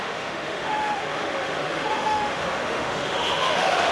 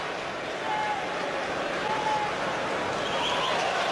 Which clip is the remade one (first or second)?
first